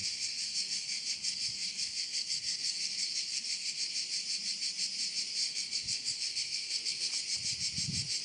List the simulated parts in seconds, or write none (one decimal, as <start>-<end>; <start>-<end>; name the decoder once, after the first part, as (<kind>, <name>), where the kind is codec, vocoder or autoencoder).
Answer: 0.0-3.8 (codec, SNAC); 5.4-7.1